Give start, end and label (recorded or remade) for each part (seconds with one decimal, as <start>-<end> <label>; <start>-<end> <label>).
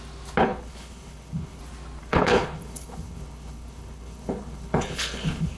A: 0.0-0.4 recorded; 0.4-1.6 remade; 1.6-2.0 recorded; 2.0-5.6 remade